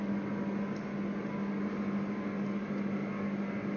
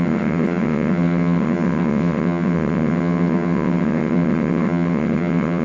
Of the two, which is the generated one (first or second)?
second